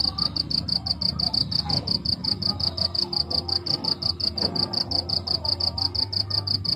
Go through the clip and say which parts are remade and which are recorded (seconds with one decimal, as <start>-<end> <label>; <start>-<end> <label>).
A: 0.0-6.8 recorded